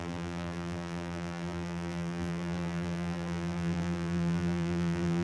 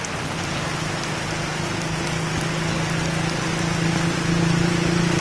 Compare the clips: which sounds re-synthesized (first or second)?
first